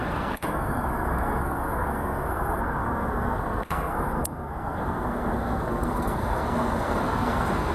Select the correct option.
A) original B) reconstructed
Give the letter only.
B